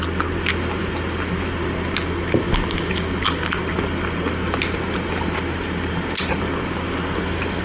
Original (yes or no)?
yes